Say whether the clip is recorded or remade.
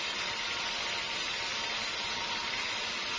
recorded